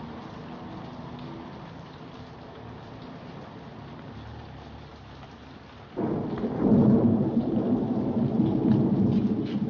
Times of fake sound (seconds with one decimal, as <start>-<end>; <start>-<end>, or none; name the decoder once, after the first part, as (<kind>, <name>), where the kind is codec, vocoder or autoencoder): none